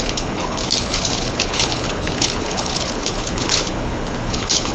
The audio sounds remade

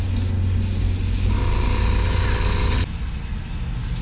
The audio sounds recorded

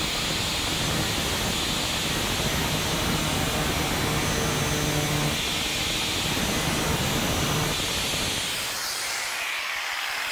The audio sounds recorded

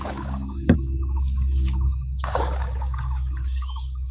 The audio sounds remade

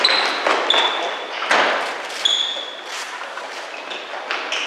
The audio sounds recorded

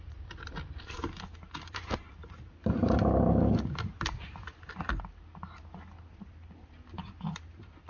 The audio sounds recorded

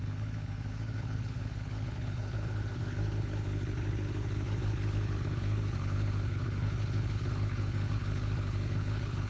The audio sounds remade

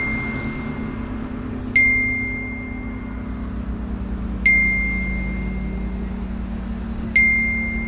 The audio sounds recorded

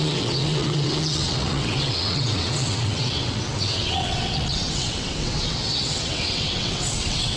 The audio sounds remade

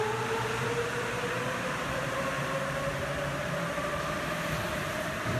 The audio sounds recorded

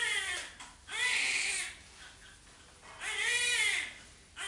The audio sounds recorded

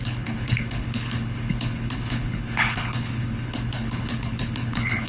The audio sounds remade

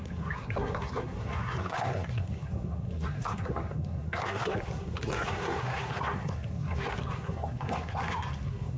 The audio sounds remade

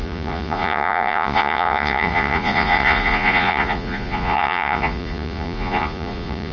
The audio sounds remade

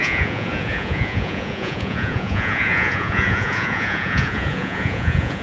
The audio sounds remade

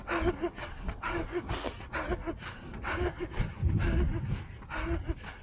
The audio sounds recorded